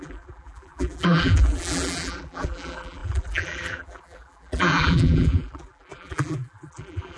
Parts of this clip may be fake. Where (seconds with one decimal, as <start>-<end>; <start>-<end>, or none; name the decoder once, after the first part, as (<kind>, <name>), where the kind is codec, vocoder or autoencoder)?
0.0-7.2 (vocoder, BigVGAN v2)